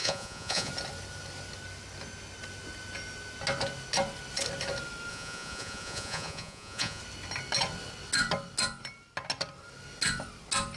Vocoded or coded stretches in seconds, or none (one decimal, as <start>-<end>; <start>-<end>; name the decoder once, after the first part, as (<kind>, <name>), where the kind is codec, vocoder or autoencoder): 0.0-0.7 (vocoder, Vocos); 5.1-7.0